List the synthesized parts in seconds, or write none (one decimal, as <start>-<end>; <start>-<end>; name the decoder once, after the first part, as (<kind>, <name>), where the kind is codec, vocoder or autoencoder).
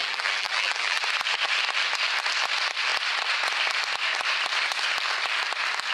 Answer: 0.0-1.0 (vocoder, BigVGAN v2)